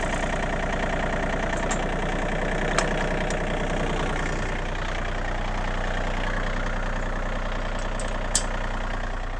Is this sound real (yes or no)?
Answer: yes